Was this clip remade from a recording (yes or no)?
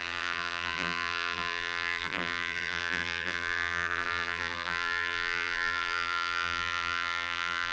yes